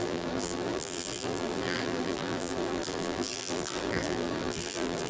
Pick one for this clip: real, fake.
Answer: fake